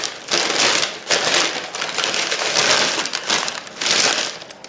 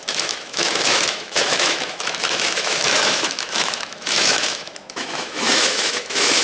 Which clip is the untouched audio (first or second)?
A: first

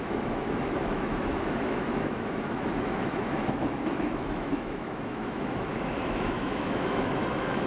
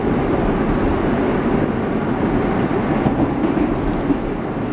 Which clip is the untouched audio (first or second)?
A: second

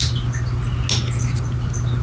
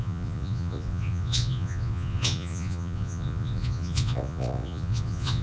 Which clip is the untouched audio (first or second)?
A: first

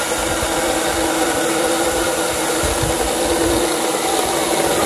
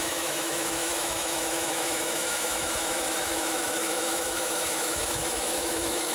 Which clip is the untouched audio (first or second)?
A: first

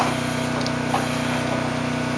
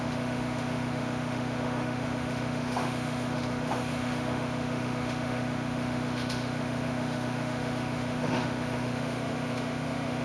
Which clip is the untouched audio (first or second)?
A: first